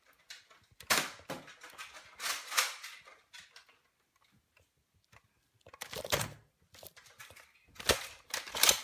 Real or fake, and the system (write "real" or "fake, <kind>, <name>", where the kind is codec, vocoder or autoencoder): real